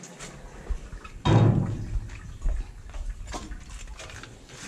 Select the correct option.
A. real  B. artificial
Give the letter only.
A